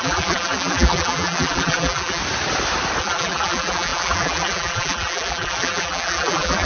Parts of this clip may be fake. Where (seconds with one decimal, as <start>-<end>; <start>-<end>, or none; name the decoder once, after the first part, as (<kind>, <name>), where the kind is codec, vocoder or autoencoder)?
0.0-2.2 (vocoder, BigVGAN v2); 3.0-6.7